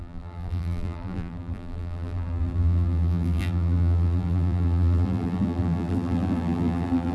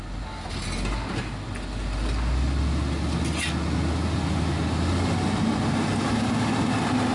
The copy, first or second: first